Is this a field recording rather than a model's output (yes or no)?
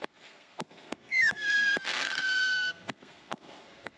no